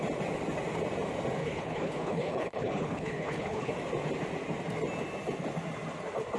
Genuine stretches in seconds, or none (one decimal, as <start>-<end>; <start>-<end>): 0.0-1.4; 3.7-6.4

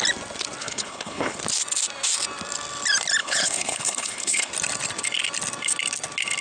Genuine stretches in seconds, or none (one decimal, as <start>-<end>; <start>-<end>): 0.0-0.6; 1.4-3.2; 4.5-6.4

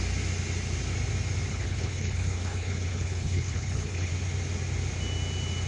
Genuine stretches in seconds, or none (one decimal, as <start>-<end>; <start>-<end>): 0.0-1.5; 4.1-5.7

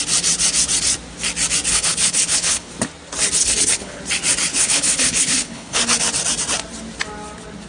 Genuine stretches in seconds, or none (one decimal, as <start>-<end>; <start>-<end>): 0.0-1.7; 2.7-3.4; 4.0-4.5; 5.8-7.7

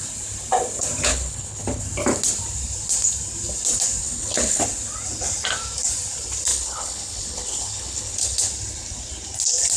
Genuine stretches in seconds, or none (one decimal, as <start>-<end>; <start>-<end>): 0.0-1.1; 1.8-4.0; 4.6-6.5; 8.5-9.8

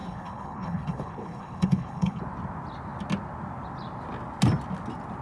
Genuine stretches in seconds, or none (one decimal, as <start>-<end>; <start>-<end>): 2.2-5.2

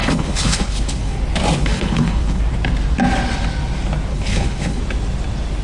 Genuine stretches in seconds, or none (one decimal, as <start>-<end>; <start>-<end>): 1.2-1.6; 2.4-4.1; 4.8-5.6

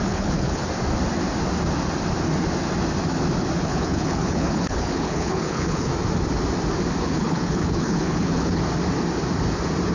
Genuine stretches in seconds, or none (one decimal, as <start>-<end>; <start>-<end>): 0.6-3.6; 5.9-7.0; 8.6-9.9